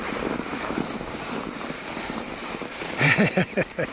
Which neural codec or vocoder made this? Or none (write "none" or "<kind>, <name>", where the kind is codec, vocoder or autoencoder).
vocoder, BigVGAN v2